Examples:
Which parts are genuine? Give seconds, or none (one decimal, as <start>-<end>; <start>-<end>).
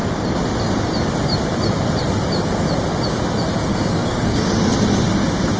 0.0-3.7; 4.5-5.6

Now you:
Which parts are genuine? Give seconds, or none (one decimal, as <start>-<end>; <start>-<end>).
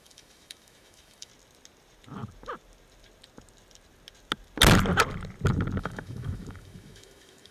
1.3-5.8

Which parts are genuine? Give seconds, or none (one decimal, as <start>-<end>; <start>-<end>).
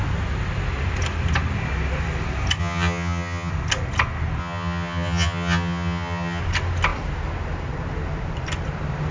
0.0-2.6; 3.5-4.4; 6.4-9.1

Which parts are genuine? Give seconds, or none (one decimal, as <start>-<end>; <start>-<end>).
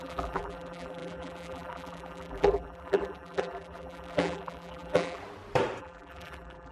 5.2-5.8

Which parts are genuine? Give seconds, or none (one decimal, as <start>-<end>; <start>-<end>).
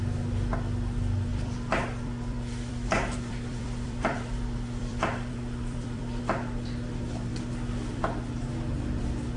0.0-1.3; 6.2-9.4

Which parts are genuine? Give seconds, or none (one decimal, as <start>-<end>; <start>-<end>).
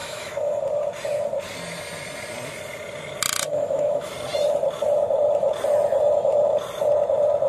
0.6-3.5; 4.1-7.5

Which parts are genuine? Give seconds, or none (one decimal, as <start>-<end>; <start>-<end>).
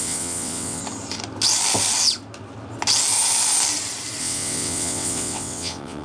0.8-4.2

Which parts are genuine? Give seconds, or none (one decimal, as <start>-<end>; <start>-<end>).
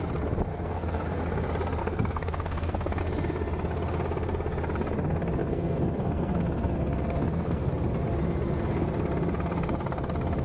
0.0-0.5; 1.2-1.8; 3.0-5.4; 7.7-10.4